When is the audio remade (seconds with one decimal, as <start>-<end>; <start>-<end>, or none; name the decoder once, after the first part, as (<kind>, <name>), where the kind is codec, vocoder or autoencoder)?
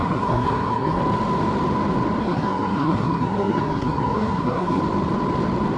0.0-1.0 (codec, SNAC); 2.2-4.8